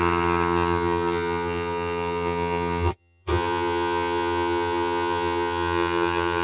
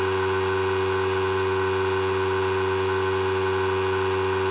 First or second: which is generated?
first